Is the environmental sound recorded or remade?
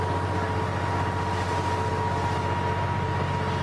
recorded